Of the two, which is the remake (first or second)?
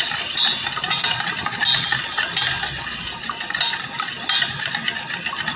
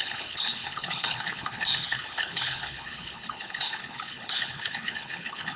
second